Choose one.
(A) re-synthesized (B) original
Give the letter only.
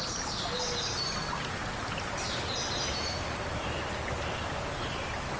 B